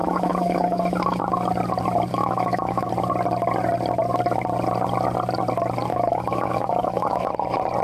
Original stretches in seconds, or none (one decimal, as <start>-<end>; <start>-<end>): 1.2-2.1; 2.9-5.9; 7.3-7.8

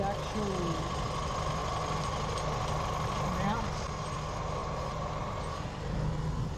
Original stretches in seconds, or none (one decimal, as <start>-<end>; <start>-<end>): 0.0-4.6; 6.0-6.6

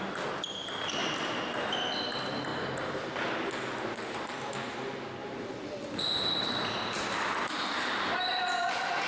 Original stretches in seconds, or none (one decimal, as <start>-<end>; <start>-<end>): 0.0-5.2

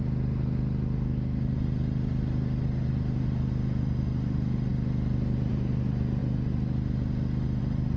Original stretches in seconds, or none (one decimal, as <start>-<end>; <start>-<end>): 0.0-8.0

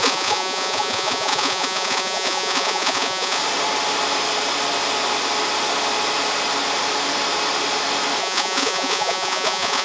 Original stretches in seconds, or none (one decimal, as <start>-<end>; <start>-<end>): 3.4-8.2

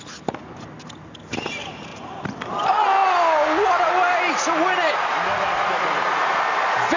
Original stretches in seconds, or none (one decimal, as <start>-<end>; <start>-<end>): 0.0-1.9; 2.5-7.0

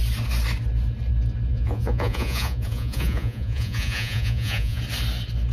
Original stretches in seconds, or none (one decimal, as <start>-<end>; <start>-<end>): 0.0-1.5; 4.8-5.5

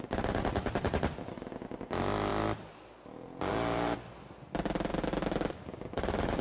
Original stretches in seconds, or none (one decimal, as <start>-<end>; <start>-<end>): 0.0-6.4